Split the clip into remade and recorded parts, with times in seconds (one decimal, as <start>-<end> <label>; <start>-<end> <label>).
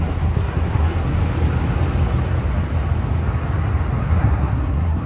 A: 0.0-1.2 remade; 1.2-4.0 recorded; 4.0-5.1 remade